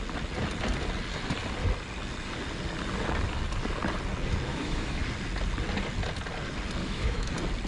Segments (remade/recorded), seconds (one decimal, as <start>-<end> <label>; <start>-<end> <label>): 0.0-4.5 recorded; 4.5-5.0 remade; 5.0-6.8 recorded; 6.8-7.3 remade; 7.3-7.7 recorded